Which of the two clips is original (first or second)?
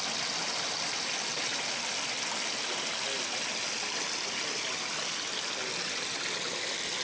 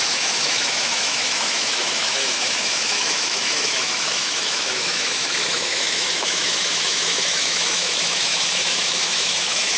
first